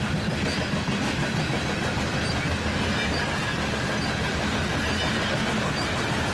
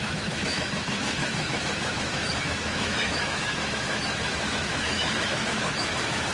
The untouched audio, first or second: first